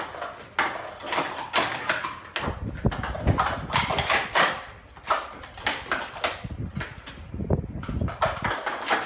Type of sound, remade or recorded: recorded